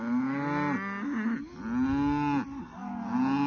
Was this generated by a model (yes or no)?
no